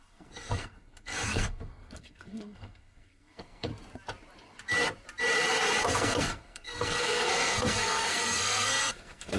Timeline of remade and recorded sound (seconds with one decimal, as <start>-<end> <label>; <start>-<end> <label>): 0.0-3.7 remade; 3.7-5.9 recorded; 5.9-9.4 remade